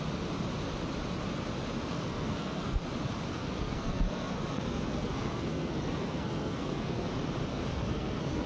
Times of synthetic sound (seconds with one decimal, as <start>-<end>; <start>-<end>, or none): 1.9-2.8; 3.3-7.1; 7.5-8.5